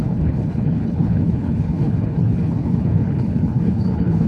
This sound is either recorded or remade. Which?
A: remade